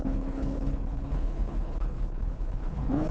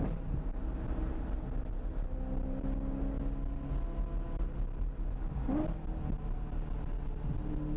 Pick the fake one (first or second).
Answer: first